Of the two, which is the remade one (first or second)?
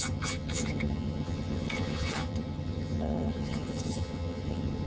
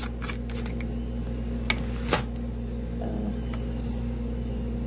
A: first